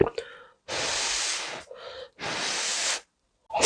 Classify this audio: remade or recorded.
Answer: recorded